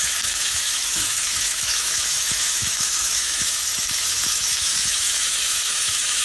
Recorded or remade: remade